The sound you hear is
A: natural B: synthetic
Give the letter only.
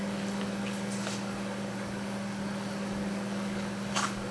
B